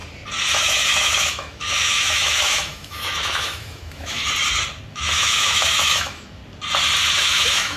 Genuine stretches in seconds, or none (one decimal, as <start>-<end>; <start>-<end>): 0.0-0.6; 4.2-4.9; 6.4-7.2